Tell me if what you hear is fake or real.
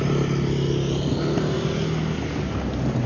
real